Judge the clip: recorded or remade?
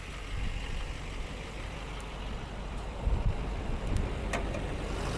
remade